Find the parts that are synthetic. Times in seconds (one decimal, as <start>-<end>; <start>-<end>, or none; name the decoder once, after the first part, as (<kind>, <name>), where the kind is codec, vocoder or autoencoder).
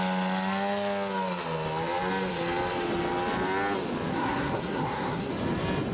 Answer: 4.1-5.3 (codec, SNAC)